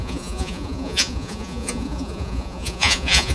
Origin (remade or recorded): remade